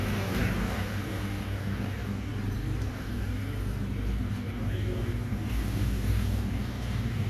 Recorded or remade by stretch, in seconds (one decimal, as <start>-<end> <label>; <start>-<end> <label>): 0.0-2.3 remade; 2.3-2.9 recorded; 2.9-3.4 remade; 3.4-4.3 recorded; 4.3-7.3 remade